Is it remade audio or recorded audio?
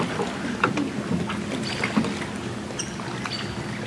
recorded